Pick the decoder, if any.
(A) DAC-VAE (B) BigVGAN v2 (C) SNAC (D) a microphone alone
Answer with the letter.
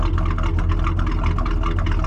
D